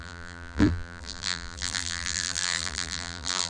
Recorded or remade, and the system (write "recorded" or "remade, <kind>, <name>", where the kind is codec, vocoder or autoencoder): remade, vocoder, BigVGAN v2